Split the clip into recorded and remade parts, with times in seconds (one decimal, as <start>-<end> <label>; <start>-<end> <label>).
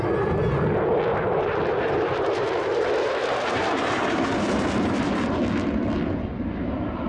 0.0-1.1 recorded; 1.1-5.4 remade; 5.4-7.1 recorded